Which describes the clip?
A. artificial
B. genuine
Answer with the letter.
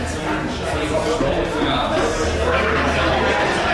B